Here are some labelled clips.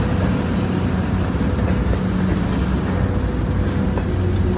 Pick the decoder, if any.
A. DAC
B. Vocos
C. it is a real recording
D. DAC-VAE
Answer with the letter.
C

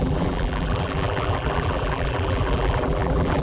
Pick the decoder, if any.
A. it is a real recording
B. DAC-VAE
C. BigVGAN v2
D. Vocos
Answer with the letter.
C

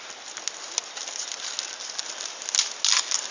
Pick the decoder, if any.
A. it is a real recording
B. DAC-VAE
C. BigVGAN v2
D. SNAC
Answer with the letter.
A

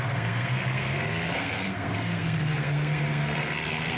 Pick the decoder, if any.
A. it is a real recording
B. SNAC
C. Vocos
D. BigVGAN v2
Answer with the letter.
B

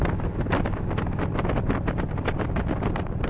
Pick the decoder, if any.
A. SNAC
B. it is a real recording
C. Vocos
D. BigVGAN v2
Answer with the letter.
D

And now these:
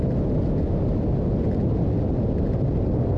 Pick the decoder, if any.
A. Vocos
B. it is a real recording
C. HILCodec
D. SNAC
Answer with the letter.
B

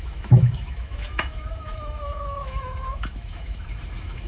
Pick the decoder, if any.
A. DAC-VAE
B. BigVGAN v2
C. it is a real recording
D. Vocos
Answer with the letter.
A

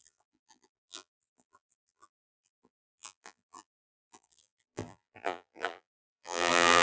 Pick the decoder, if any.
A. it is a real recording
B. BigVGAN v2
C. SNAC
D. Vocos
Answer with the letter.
B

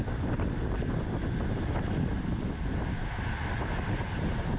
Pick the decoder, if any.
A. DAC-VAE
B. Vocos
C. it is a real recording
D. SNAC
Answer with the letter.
C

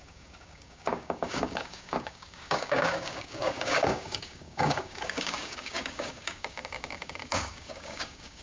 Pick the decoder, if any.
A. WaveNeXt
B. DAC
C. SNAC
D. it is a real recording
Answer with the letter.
B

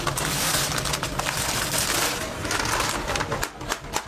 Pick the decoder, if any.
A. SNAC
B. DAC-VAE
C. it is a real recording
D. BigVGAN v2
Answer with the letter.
C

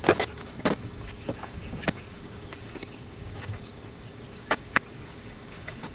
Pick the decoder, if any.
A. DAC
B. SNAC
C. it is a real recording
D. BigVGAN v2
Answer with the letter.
A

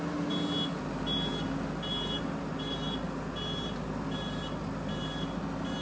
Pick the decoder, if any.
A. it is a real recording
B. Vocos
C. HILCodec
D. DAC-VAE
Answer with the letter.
A